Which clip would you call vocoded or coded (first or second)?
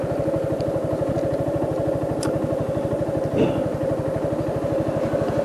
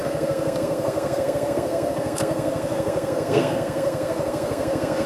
second